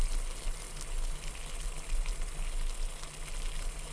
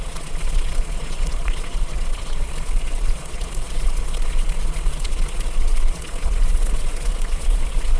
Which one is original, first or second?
first